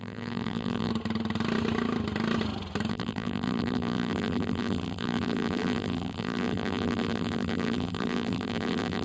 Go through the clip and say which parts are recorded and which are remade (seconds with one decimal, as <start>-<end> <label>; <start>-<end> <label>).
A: 0.0-0.9 remade; 0.9-2.9 recorded; 2.9-9.0 remade

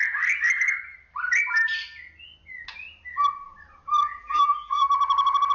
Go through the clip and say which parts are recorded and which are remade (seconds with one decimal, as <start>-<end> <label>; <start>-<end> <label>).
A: 0.0-4.2 recorded; 4.2-4.9 remade; 4.9-5.5 recorded

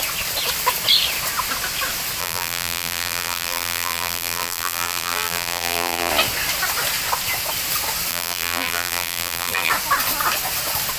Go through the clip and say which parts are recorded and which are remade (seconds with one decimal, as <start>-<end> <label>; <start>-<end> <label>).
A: 0.0-2.2 recorded; 2.2-6.1 remade; 6.1-8.1 recorded; 8.1-9.7 remade; 9.7-11.0 recorded

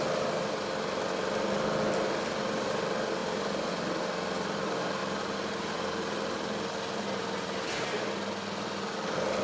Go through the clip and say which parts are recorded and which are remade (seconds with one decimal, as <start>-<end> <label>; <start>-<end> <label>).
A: 0.0-3.2 recorded; 3.2-3.7 remade; 3.7-5.0 recorded; 5.0-5.7 remade; 5.7-9.4 recorded

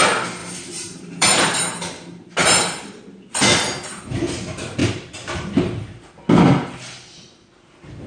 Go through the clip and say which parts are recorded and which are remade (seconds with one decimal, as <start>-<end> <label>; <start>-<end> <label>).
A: 0.0-0.4 recorded; 0.4-1.6 remade; 1.6-2.4 recorded; 2.4-3.0 remade; 3.0-4.8 recorded; 4.8-5.8 remade; 5.8-8.1 recorded

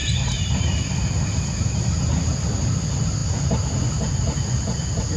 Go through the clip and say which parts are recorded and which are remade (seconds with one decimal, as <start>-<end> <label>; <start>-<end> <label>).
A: 0.0-5.2 recorded

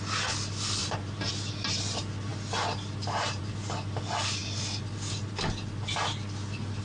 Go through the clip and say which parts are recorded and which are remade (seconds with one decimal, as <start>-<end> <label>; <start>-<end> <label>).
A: 0.0-0.8 recorded; 0.8-1.3 remade; 1.3-6.8 recorded

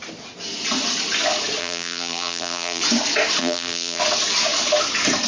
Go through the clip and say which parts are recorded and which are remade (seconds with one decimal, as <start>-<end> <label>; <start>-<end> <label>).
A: 0.0-1.6 recorded; 1.6-2.8 remade; 2.8-3.4 recorded; 3.4-4.0 remade; 4.0-5.3 recorded